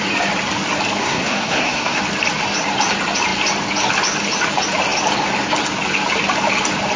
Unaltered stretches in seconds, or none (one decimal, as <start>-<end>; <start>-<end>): 0.0-1.0; 2.0-7.0

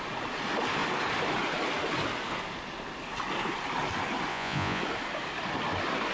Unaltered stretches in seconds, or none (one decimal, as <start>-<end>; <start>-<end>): 0.0-4.3; 4.8-6.1

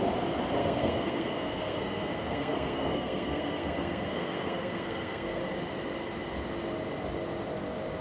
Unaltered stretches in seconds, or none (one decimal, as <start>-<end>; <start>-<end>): 0.0-0.6; 5.4-8.0

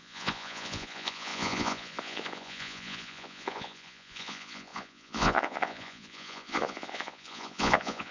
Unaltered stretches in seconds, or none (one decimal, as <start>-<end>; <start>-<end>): none